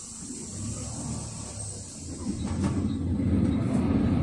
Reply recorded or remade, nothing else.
recorded